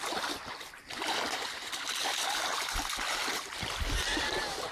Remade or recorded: recorded